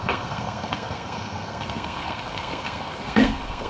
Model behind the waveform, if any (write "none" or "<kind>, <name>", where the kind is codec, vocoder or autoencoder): codec, SNAC